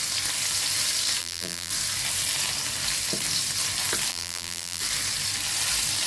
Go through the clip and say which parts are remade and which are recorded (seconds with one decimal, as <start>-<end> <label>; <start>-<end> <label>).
0.0-1.2 recorded; 1.2-1.7 remade; 1.7-4.1 recorded; 4.1-4.8 remade; 4.8-6.1 recorded